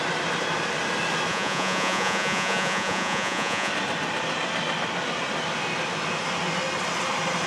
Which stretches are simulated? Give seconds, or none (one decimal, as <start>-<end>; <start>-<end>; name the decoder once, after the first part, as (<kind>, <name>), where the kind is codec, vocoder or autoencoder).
1.3-3.7 (vocoder, Vocos)